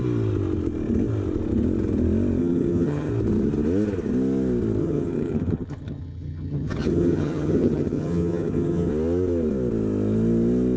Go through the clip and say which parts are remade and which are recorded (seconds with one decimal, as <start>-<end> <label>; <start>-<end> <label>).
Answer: 0.0-2.4 recorded; 2.4-3.1 remade; 3.1-4.8 recorded; 4.8-8.9 remade; 8.9-10.8 recorded

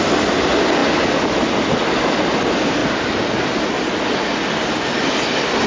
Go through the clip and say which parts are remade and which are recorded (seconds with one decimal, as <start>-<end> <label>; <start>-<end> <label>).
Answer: 0.0-5.7 recorded

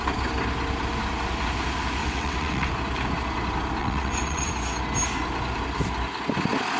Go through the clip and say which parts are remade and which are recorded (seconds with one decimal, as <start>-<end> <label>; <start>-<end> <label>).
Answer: 0.0-2.0 recorded; 2.0-2.7 remade; 2.7-3.8 recorded; 3.8-4.5 remade; 4.5-6.8 recorded

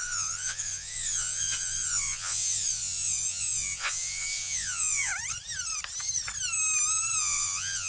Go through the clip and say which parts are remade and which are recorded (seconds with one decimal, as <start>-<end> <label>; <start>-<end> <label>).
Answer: 0.0-5.1 remade; 5.1-7.2 recorded; 7.2-7.9 remade

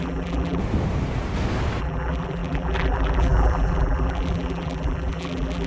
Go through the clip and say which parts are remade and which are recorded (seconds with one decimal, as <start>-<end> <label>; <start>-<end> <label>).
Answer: 0.0-0.6 remade; 0.6-1.8 recorded; 1.8-5.7 remade

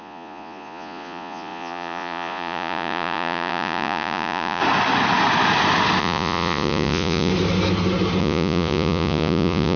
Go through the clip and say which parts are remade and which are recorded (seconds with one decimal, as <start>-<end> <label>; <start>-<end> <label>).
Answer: 0.0-4.6 remade; 4.6-6.0 recorded; 6.0-7.3 remade; 7.3-8.2 recorded; 8.2-9.8 remade

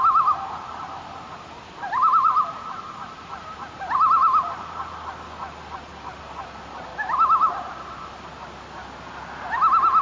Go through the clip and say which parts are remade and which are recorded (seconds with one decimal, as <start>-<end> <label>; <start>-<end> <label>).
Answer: 0.0-4.6 remade; 4.6-6.9 recorded; 6.9-7.7 remade; 7.7-10.0 recorded